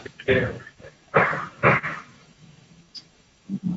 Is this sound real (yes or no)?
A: no